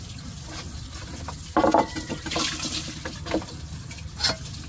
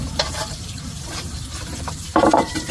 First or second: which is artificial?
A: second